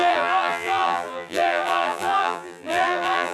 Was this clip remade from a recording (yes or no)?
yes